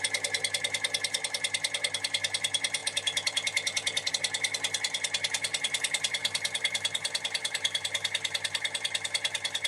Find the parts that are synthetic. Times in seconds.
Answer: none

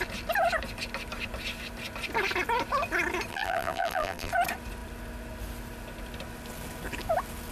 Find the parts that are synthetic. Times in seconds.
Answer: 3.3-4.3 (vocoder, BigVGAN v2)

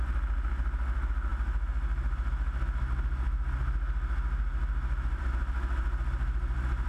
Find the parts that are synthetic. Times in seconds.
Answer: none

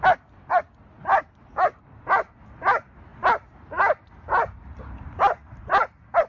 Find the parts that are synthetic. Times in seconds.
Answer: none

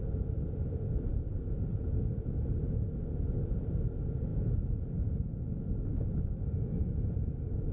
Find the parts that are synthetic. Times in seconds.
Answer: none

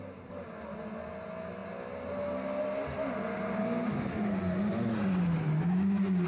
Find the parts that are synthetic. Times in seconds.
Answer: none

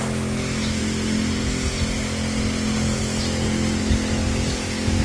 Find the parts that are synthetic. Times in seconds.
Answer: 0.0-0.8 (autoencoder, DAC-VAE); 3.8-5.0

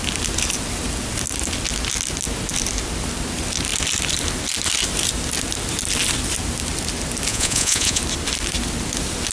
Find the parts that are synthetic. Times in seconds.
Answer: 7.3-8.0 (vocoder, Vocos)